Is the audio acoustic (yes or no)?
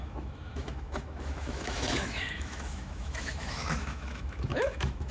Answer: no